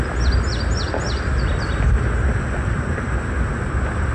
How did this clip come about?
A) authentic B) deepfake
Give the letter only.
A